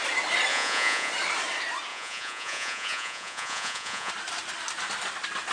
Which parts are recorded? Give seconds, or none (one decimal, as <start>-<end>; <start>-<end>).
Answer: 0.0-0.5; 1.1-1.9; 4.1-5.5